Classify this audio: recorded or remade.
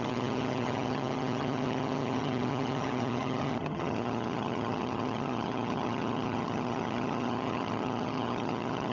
remade